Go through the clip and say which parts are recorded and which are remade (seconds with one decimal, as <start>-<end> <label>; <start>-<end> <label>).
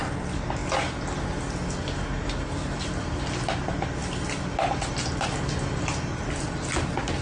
0.0-7.2 recorded